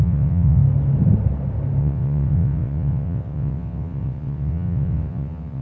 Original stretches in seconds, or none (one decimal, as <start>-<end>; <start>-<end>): 0.6-1.8